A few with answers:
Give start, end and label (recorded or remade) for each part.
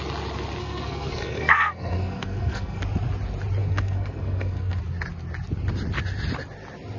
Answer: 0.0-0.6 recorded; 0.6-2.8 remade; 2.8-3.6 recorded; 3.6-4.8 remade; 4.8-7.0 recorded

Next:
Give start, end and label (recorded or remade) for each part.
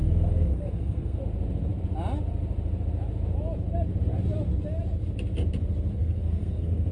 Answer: 0.0-1.2 remade; 1.2-6.0 recorded; 6.0-6.9 remade